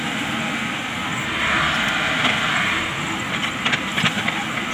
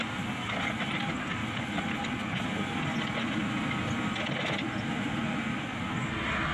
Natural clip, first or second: second